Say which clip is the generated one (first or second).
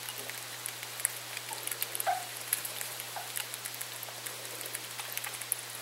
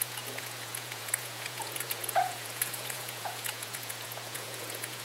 second